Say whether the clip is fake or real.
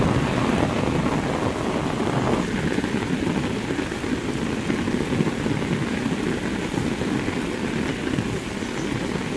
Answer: real